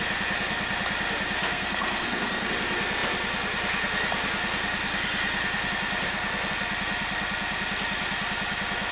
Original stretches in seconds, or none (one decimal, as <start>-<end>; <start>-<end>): 0.0-1.4; 2.5-8.9